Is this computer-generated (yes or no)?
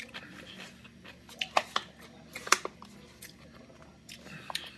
no